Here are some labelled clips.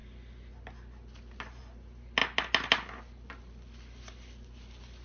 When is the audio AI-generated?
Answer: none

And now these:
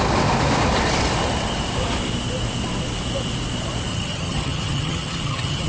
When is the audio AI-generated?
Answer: 3.9-5.7 (vocoder, HiFi-GAN)